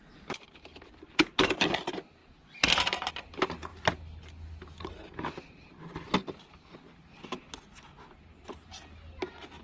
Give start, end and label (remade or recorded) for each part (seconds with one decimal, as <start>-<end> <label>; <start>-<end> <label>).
0.0-2.2 recorded; 2.2-3.1 remade; 3.1-9.6 recorded